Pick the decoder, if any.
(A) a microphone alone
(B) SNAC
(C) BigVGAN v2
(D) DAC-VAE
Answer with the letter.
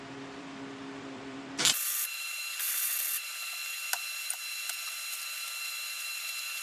C